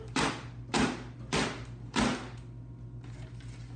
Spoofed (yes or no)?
no